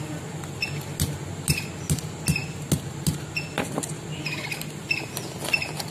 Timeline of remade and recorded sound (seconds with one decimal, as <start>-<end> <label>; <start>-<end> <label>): 0.0-5.9 recorded